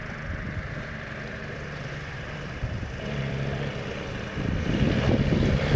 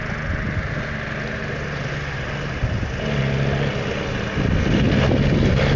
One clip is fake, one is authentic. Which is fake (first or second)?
first